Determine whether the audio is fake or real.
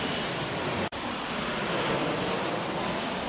real